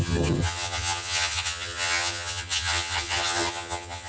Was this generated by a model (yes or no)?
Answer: yes